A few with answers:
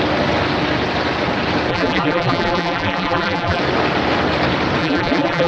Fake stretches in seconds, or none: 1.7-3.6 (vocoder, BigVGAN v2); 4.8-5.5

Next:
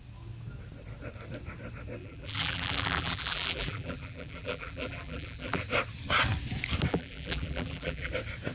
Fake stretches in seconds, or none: 2.0-5.6 (vocoder, BigVGAN v2); 6.9-8.1

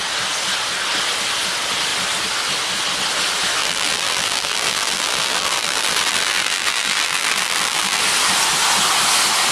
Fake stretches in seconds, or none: 3.6-8.0 (vocoder, BigVGAN v2)

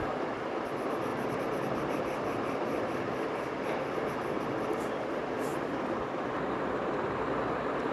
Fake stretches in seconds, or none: 1.1-1.6 (vocoder, BigVGAN v2); 5.5-7.4